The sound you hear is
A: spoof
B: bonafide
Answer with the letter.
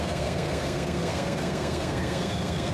A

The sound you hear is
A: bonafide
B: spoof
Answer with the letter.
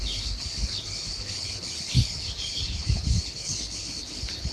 B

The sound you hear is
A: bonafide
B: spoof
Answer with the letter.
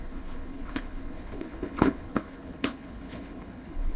B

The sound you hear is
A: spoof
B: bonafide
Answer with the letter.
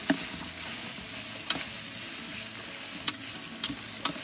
B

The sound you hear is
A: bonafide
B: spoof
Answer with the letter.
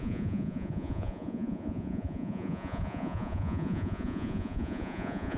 B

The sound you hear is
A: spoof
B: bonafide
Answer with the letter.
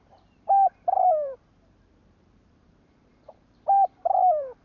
A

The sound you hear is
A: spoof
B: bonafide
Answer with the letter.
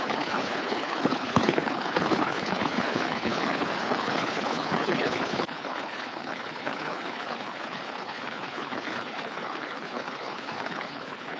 A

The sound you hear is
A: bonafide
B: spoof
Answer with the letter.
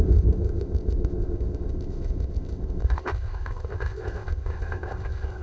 B